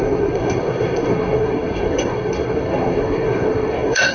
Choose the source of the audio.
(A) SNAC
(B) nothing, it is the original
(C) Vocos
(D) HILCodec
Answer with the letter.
A